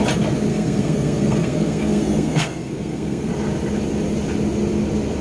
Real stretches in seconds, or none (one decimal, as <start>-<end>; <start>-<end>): 0.0-0.5; 3.3-5.2